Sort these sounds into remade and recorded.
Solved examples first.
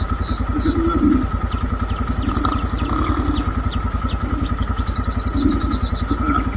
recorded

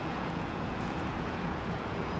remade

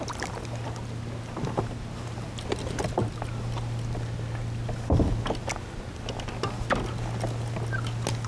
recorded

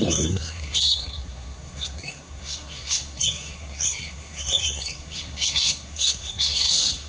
remade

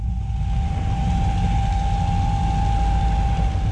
recorded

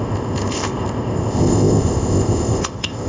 remade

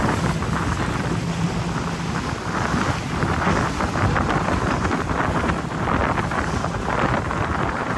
recorded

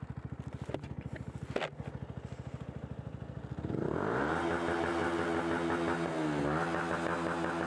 recorded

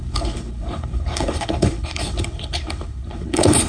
remade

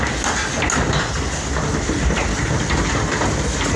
recorded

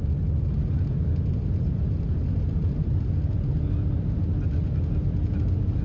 recorded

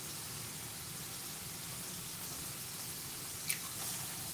recorded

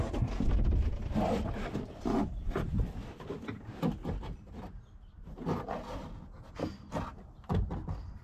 recorded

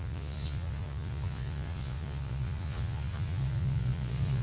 remade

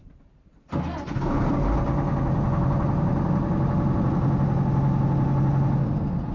recorded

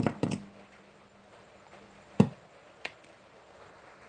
recorded